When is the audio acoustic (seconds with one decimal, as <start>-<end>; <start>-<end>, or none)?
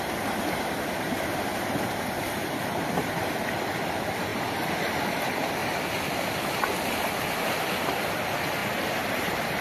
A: 4.3-4.9; 5.6-7.5; 8.6-9.6